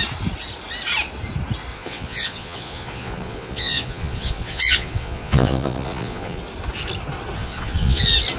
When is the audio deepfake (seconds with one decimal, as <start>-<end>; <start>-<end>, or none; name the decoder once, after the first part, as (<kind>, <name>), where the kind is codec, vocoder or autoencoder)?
1.7-6.4 (vocoder, Vocos); 7.4-8.0